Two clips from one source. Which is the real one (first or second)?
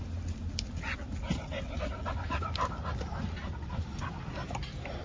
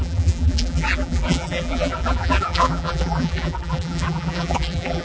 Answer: first